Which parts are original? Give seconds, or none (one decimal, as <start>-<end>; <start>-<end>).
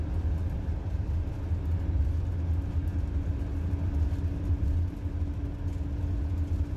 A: 0.0-6.8